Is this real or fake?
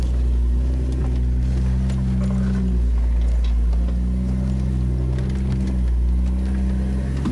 real